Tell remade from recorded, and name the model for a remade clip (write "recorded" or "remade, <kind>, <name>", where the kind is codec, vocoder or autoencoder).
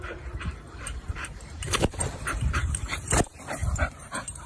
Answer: remade, vocoder, BigVGAN v2